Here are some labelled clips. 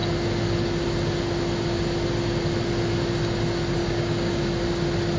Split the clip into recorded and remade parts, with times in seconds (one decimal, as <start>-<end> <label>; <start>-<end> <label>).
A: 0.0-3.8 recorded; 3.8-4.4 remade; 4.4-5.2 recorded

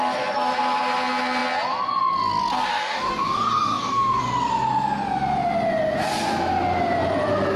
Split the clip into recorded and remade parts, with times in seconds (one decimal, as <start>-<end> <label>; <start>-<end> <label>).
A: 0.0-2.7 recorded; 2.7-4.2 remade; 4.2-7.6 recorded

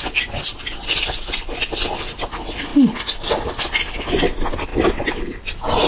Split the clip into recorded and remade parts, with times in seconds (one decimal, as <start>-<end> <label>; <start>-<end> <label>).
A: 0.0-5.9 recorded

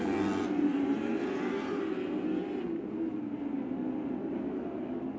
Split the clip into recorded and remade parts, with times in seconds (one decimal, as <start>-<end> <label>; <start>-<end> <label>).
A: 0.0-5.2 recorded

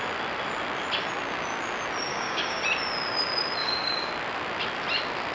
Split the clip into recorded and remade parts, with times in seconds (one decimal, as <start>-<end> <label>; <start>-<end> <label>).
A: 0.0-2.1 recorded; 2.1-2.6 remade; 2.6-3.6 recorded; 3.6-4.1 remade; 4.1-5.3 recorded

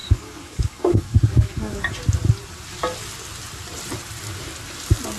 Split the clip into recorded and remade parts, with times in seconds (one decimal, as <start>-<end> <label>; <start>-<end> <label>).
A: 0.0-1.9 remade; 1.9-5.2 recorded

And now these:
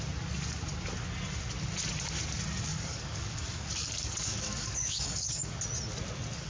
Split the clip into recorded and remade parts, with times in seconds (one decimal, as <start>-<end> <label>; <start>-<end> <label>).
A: 0.0-2.7 recorded; 2.7-5.5 remade; 5.5-6.5 recorded

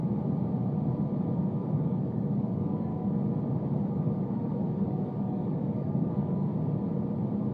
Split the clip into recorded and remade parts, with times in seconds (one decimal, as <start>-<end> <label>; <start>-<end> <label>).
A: 0.0-1.4 recorded; 1.4-2.9 remade; 2.9-3.9 recorded; 3.9-6.5 remade; 6.5-7.5 recorded